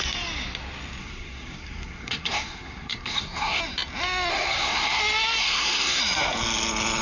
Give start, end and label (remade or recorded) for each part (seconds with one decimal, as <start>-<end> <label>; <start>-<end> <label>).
0.0-1.0 recorded; 1.0-3.6 remade; 3.6-4.3 recorded; 4.3-5.0 remade; 5.0-5.4 recorded; 5.4-6.0 remade; 6.0-7.0 recorded